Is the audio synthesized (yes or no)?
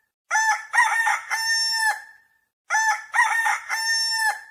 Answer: no